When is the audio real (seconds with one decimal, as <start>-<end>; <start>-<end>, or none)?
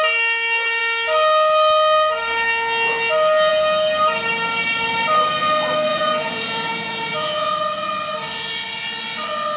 0.0-5.9; 7.6-9.6